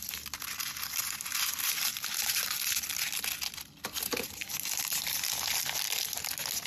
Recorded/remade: recorded